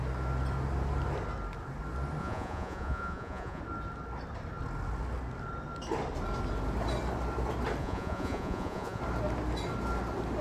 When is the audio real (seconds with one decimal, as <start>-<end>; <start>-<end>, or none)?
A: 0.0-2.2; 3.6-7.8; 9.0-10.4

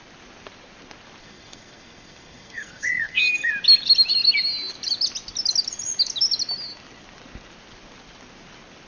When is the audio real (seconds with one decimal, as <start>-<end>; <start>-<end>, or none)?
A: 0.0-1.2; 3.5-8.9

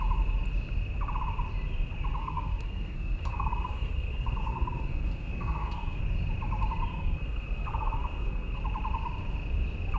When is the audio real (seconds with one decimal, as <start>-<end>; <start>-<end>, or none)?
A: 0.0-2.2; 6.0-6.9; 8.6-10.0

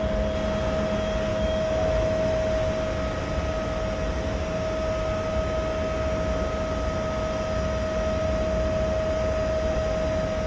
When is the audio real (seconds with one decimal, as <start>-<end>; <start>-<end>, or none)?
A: 0.0-1.3; 2.3-10.5